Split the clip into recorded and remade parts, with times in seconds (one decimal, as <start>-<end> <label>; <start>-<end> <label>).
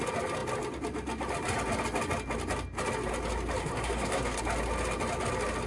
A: 0.0-3.6 recorded; 3.6-4.4 remade; 4.4-5.7 recorded